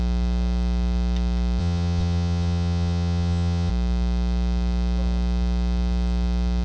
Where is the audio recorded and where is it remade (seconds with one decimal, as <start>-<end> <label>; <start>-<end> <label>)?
0.0-1.6 recorded; 1.6-3.7 remade; 3.7-6.6 recorded

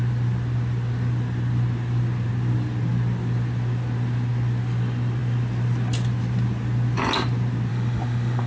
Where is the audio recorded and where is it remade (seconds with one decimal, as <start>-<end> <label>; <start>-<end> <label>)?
0.0-7.7 recorded; 7.7-8.5 remade

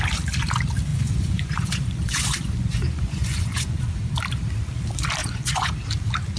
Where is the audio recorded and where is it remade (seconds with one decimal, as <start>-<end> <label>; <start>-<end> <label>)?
0.0-0.9 recorded; 0.9-3.8 remade; 3.8-5.2 recorded; 5.2-5.7 remade; 5.7-6.4 recorded

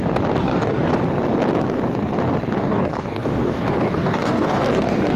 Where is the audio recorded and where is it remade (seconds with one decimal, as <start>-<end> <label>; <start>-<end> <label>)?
0.0-0.4 recorded; 0.4-0.9 remade; 0.9-2.6 recorded; 2.6-5.2 remade

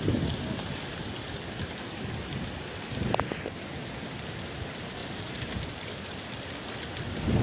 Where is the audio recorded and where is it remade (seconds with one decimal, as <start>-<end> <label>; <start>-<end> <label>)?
0.0-5.0 recorded; 5.0-6.2 remade; 6.2-7.4 recorded